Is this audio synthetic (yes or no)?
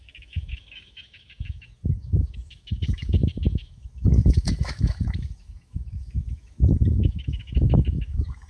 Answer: yes